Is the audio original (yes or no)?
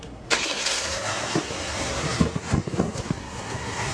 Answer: no